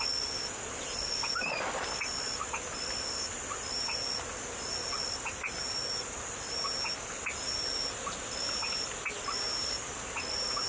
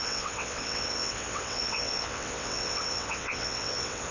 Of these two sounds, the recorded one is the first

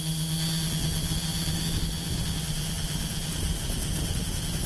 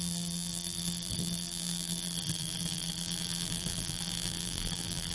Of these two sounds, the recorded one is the first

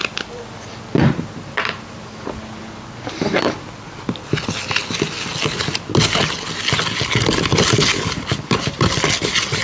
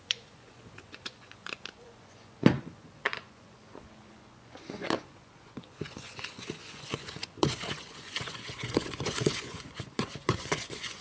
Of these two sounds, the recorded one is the first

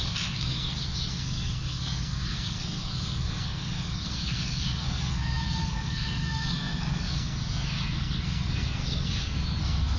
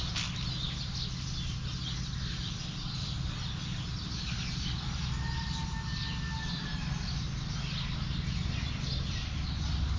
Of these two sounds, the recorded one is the second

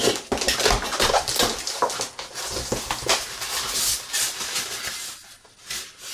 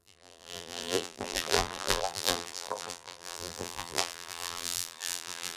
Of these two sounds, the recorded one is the first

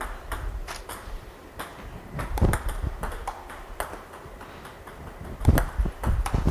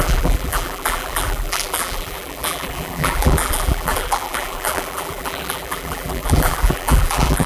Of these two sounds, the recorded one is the first